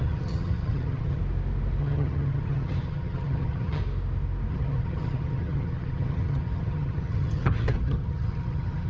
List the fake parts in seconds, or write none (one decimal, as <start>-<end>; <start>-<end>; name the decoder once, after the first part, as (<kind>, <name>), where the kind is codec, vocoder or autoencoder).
0.0-1.2 (vocoder, HiFi-GAN); 1.8-3.8; 4.5-8.9